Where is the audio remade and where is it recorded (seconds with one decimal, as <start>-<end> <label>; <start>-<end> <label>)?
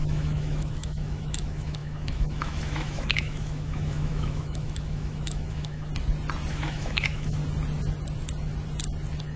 0.0-5.9 remade; 5.9-6.5 recorded; 6.5-7.4 remade; 7.4-9.4 recorded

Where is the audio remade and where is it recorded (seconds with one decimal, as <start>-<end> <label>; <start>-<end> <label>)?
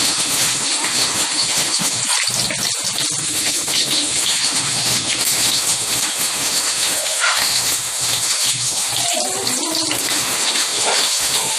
0.0-2.0 remade; 2.0-3.2 recorded; 3.2-8.9 remade; 8.9-10.0 recorded; 10.0-11.6 remade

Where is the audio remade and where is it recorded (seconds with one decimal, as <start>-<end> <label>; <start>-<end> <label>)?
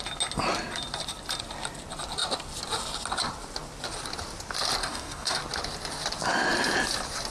0.0-4.8 recorded; 4.8-5.4 remade; 5.4-7.3 recorded